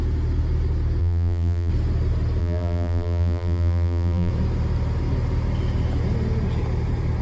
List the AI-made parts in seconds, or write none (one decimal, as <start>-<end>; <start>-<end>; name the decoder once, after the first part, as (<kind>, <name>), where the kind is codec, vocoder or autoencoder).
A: 1.0-1.7 (vocoder, BigVGAN v2); 2.4-4.3